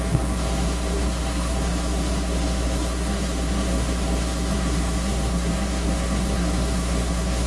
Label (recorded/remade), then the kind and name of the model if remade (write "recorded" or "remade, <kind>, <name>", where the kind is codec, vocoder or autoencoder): remade, codec, SNAC